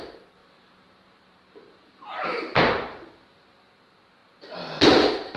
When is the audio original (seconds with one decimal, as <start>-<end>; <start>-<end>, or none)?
0.0-0.4; 3.6-5.4